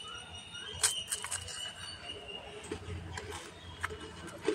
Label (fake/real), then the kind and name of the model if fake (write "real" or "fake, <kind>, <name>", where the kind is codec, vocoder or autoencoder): real